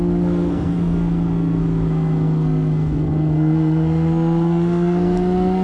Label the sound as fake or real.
fake